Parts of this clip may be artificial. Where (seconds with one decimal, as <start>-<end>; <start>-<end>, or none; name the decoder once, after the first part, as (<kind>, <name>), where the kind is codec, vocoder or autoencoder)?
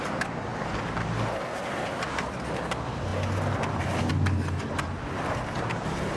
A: none